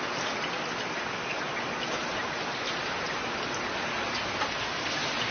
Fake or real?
real